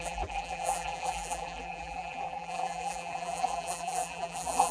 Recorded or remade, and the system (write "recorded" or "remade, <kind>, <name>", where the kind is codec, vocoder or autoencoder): remade, vocoder, BigVGAN v2